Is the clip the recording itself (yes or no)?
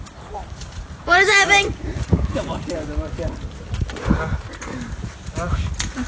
yes